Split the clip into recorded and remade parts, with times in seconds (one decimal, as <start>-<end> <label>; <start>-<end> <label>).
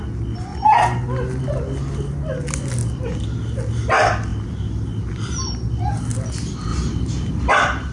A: 0.0-7.9 recorded